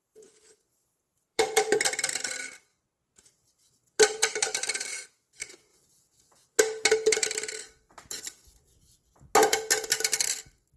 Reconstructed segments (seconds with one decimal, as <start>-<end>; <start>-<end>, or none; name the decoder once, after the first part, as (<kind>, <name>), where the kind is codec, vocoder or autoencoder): 1.1-1.9 (vocoder, BigVGAN v2); 2.7-5.1; 5.7-6.6